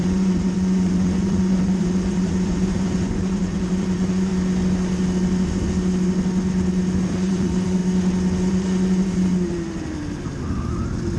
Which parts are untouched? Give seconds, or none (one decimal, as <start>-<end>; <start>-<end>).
4.3-7.1; 7.8-8.5; 9.3-11.2